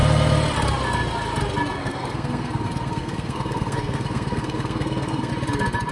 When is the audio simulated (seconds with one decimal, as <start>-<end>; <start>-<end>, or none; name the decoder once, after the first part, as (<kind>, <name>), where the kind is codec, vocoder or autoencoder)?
1.8-5.3 (codec, SNAC)